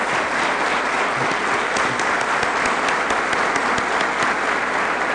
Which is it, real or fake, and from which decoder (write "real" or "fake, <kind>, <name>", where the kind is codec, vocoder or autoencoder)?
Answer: real